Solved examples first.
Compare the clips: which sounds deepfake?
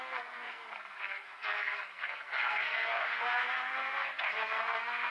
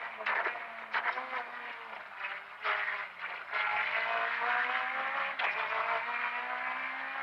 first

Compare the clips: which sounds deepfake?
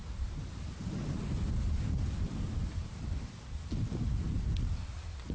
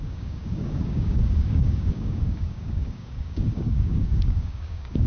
second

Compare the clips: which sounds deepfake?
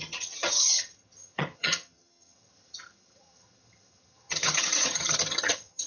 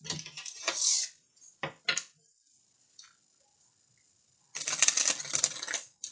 first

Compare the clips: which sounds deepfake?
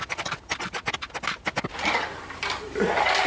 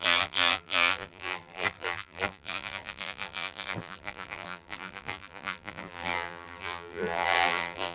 second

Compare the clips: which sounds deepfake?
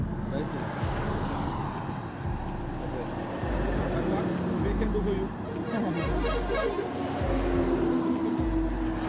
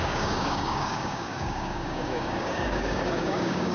second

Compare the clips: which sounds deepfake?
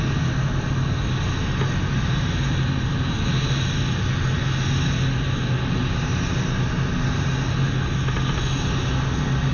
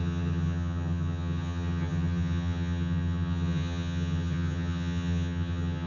second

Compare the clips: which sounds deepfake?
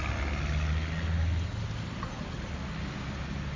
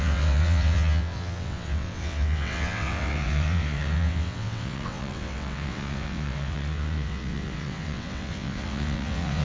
second